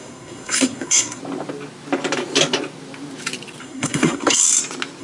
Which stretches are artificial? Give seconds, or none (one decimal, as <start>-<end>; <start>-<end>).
0.0-1.2; 3.6-4.4